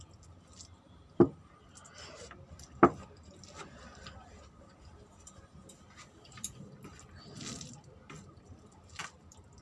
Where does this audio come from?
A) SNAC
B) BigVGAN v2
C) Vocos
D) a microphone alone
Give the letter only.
D